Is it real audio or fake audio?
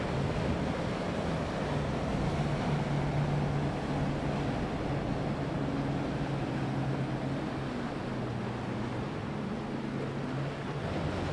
real